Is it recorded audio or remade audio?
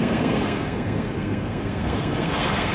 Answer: remade